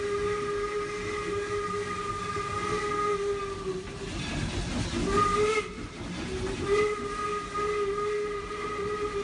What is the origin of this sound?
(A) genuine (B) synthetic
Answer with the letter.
A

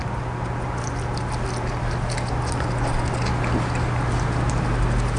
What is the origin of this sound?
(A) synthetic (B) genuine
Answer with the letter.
B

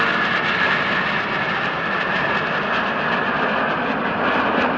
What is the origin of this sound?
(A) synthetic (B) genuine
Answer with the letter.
B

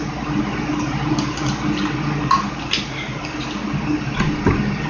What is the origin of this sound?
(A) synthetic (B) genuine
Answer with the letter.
B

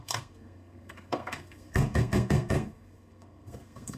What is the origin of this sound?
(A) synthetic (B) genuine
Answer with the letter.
A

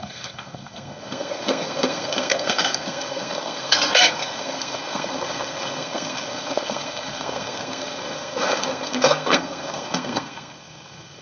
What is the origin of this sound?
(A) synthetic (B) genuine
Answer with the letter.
A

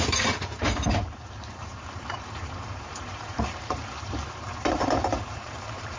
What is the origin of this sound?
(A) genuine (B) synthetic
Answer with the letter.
B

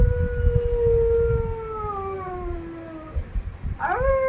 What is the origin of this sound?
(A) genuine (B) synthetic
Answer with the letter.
A